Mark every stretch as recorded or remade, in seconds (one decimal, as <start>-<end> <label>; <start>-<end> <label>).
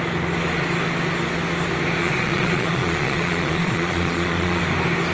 0.0-2.0 recorded; 2.0-4.6 remade; 4.6-5.1 recorded